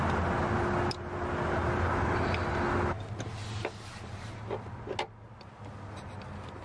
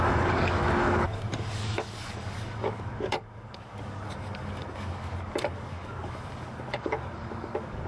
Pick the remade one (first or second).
second